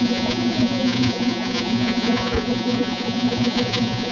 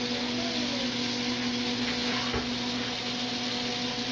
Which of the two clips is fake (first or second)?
first